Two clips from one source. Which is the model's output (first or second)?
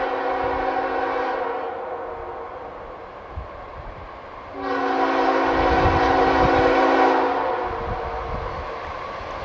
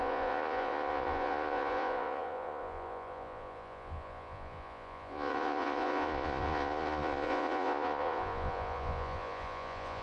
second